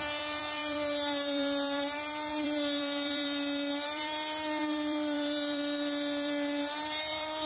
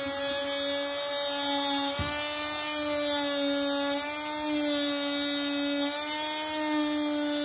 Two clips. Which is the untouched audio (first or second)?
second